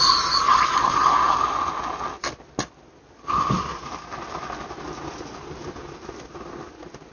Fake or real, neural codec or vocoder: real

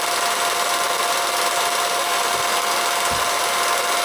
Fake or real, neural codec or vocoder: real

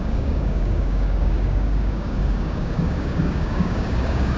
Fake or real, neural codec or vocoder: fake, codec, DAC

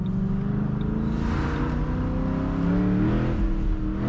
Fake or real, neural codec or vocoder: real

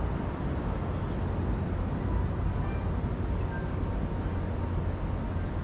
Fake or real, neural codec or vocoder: real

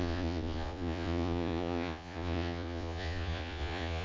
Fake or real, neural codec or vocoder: fake, vocoder, Vocos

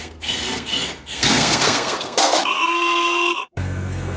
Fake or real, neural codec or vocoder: fake, codec, SNAC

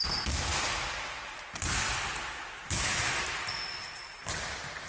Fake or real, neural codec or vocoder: real